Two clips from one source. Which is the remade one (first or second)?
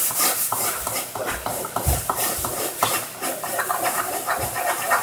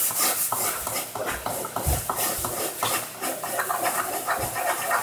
first